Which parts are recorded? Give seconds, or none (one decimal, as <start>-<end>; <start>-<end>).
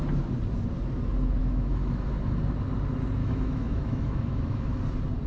0.0-1.4; 2.1-3.2; 4.8-5.3